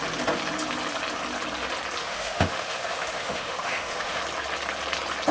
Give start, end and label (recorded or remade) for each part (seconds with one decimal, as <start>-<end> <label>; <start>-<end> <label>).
0.0-2.0 recorded; 2.0-4.2 remade; 4.2-5.3 recorded